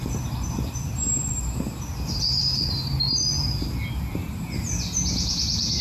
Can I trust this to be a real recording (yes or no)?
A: yes